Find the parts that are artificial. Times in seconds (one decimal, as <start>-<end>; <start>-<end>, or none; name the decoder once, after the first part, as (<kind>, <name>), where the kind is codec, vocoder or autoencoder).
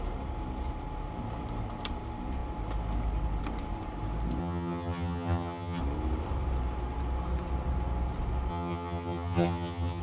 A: 4.4-5.8 (vocoder, HiFi-GAN); 8.5-10.0